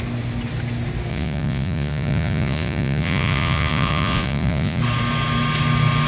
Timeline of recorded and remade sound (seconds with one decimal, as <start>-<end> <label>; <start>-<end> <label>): 0.0-1.1 recorded; 1.1-4.8 remade; 4.8-6.1 recorded